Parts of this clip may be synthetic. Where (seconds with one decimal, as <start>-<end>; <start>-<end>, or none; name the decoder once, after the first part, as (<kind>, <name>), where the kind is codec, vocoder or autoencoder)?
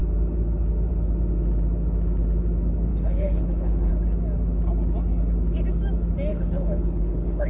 2.9-3.9 (codec, HILCodec); 6.3-7.5